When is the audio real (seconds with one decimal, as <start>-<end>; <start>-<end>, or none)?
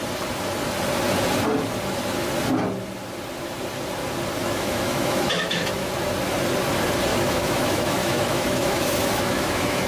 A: 0.0-4.4; 5.9-7.1